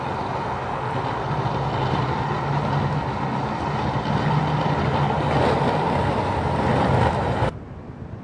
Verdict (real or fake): real